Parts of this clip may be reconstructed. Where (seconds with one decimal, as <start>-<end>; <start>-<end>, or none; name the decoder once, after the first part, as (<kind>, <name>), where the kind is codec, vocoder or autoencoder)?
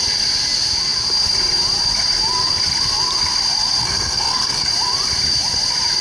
3.8-4.7 (codec, SNAC)